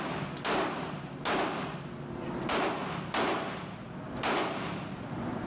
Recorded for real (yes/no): yes